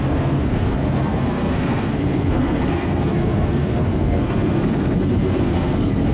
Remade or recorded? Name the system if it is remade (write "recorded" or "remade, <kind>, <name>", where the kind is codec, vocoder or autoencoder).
remade, codec, SNAC